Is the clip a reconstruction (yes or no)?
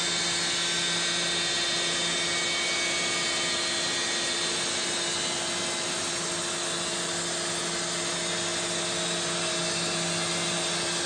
no